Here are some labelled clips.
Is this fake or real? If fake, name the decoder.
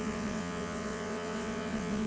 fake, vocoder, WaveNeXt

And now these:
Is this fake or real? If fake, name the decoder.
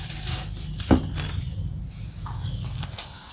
real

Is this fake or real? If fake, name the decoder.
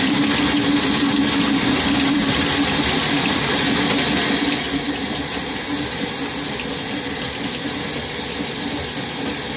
real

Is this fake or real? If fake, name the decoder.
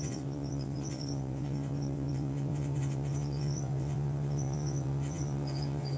fake, vocoder, WaveNeXt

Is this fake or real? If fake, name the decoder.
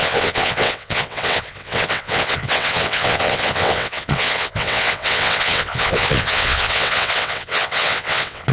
fake, vocoder, WaveNeXt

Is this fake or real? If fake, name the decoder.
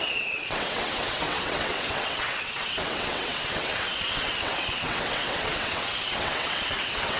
fake, vocoder, WaveNeXt